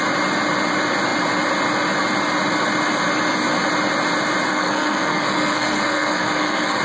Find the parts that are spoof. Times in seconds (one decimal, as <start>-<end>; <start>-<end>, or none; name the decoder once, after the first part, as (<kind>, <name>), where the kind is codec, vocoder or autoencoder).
4.5-6.8 (codec, SNAC)